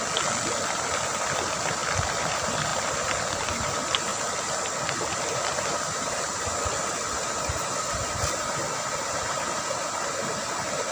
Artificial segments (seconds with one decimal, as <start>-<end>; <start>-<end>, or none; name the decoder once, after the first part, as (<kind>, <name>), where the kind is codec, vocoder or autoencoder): none